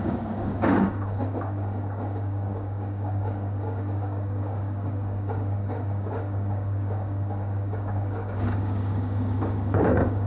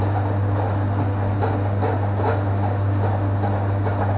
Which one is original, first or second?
second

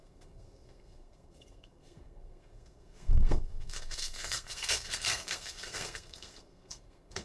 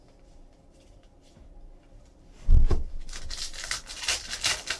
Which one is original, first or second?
second